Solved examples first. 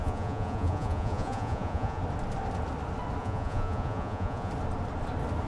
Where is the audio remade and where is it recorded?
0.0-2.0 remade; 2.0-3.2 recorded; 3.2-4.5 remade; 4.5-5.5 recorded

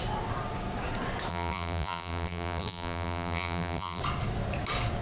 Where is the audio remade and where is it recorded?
0.0-1.3 recorded; 1.3-4.0 remade; 4.0-5.0 recorded

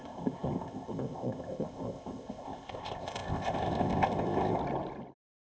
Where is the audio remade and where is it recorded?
0.0-4.6 remade; 4.6-5.4 recorded

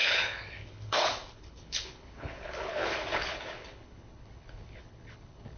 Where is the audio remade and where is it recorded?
0.0-5.6 remade